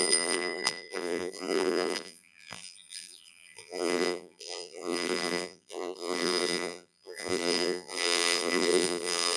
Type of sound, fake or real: fake